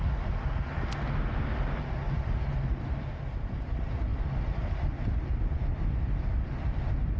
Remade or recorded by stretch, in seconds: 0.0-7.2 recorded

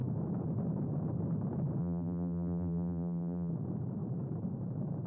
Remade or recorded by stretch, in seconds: 0.0-1.8 recorded; 1.8-3.5 remade; 3.5-5.1 recorded